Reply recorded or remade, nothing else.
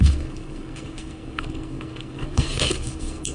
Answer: remade